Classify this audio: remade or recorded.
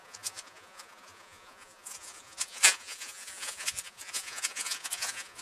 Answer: remade